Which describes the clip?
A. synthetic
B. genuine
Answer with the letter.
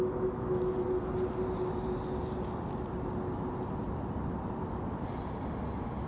B